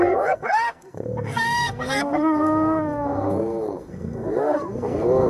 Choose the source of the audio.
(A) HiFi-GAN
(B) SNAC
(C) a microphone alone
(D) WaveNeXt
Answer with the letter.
B